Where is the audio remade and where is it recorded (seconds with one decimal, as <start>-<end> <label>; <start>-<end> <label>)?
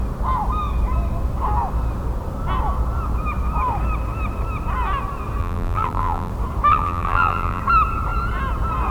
0.0-5.4 recorded; 5.4-6.3 remade; 6.3-6.7 recorded; 6.7-7.6 remade; 7.6-8.9 recorded